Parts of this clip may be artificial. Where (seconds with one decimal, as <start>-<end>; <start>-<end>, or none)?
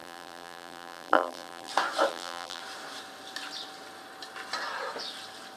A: 0.0-1.7; 2.1-2.6